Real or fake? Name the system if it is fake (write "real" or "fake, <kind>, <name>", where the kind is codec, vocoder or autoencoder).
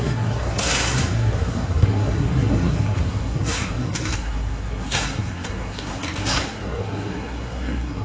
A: fake, codec, SNAC